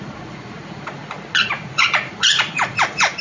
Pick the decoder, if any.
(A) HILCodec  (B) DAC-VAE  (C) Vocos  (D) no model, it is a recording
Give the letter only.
C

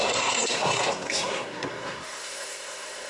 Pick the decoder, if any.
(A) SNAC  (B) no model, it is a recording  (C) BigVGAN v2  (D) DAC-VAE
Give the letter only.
A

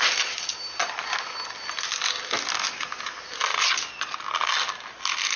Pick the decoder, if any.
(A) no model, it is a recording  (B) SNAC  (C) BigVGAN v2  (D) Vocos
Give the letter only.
A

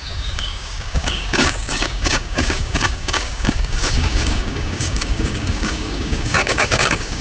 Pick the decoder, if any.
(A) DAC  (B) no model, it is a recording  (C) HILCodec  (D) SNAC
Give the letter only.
A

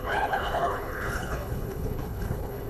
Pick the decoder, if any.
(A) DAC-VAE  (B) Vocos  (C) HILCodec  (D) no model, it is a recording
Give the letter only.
C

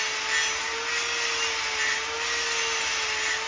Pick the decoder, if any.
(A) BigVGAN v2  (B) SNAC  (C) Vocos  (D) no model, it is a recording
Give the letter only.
D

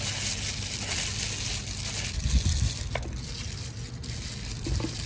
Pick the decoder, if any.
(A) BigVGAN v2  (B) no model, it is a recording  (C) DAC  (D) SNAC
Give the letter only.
B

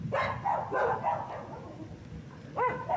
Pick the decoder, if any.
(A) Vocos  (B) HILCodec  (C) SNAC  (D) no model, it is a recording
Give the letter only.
D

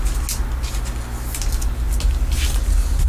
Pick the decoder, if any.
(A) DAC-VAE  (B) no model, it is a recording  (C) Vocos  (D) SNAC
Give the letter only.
B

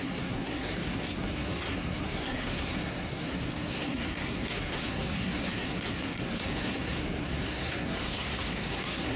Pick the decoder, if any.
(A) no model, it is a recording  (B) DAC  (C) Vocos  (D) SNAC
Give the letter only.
D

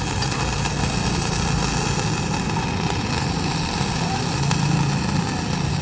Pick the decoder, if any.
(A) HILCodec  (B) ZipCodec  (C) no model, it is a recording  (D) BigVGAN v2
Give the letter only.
C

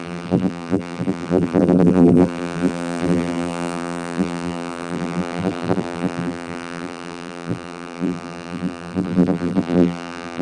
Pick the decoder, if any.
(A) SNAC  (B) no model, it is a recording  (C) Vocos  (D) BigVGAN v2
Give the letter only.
D